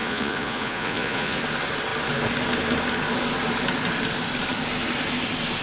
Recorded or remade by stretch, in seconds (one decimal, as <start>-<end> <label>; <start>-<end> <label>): 0.0-1.4 remade; 1.4-5.6 recorded

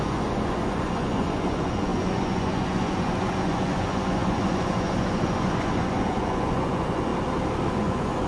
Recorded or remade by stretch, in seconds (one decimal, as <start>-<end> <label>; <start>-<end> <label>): 0.0-7.1 remade; 7.1-7.7 recorded; 7.7-8.3 remade

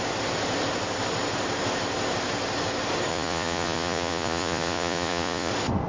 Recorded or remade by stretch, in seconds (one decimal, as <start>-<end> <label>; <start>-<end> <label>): 0.0-3.1 recorded; 3.1-5.5 remade; 5.5-5.9 recorded